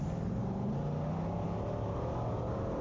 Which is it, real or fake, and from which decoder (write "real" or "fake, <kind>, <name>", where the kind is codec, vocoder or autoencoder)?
real